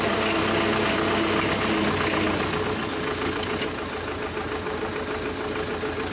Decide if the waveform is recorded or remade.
recorded